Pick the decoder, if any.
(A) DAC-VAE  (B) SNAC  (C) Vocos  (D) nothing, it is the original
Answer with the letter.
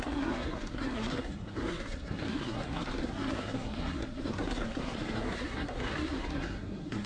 B